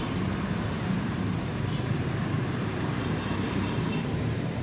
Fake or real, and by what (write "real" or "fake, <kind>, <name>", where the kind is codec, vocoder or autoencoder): fake, vocoder, BigVGAN v2